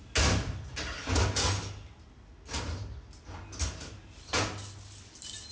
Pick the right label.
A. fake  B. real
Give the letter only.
B